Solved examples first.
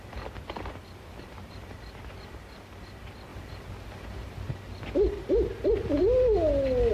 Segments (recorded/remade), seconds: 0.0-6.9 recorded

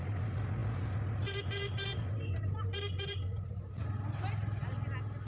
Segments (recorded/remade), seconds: 0.0-5.3 recorded

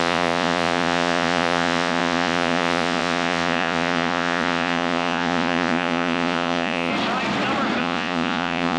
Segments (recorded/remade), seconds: 0.0-6.9 remade; 6.9-7.8 recorded; 7.8-8.8 remade